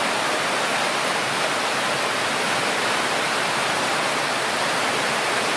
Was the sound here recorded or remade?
recorded